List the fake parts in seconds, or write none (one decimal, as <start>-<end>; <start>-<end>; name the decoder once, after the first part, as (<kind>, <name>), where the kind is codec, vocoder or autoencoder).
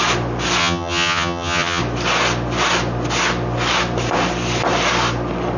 0.6-1.8 (vocoder, HiFi-GAN)